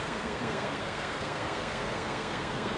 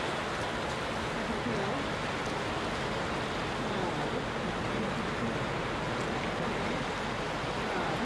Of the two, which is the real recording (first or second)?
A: second